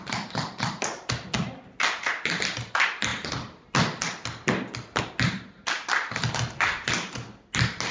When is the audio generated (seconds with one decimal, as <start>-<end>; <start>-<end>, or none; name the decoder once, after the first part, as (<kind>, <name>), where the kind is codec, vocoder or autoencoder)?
none